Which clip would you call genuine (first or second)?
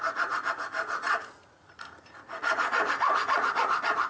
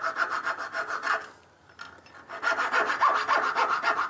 second